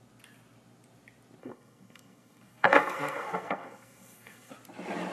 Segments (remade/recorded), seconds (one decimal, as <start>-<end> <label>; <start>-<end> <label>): 0.0-1.4 recorded; 1.4-4.5 remade; 4.5-5.1 recorded